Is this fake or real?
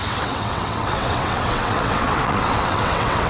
fake